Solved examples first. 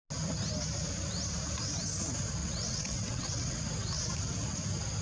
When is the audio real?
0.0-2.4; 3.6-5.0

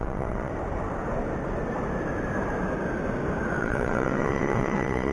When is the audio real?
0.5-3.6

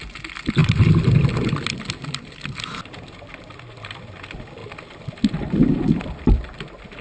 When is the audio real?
0.0-7.0

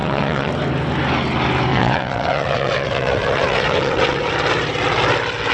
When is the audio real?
0.5-1.7; 4.3-5.5

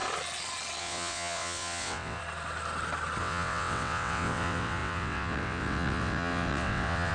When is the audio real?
0.0-0.8; 2.2-3.2

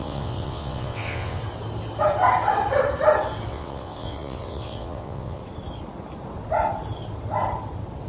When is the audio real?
1.4-3.5; 5.4-8.1